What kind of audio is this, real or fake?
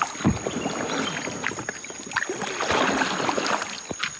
real